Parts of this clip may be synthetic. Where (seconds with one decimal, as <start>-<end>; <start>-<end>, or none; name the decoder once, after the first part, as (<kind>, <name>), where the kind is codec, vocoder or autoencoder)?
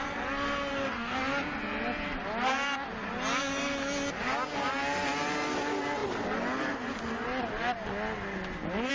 0.7-1.2 (codec, DAC)